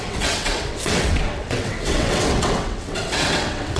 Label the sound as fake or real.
fake